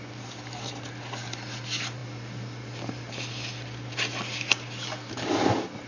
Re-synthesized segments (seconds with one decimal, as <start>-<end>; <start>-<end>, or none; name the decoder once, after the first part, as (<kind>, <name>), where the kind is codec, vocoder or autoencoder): none